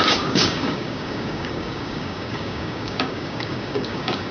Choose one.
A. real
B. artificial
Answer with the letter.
B